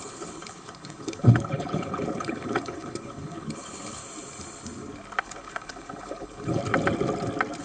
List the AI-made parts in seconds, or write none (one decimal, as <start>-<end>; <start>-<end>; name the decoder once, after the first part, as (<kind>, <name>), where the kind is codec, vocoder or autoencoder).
0.0-4.0 (codec, HILCodec); 5.2-6.6